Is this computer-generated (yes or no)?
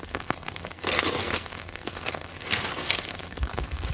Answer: yes